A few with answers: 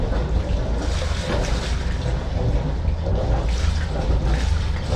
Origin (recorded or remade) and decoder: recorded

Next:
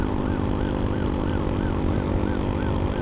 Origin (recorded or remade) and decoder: recorded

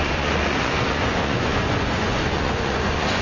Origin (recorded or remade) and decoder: remade, vocoder, Vocos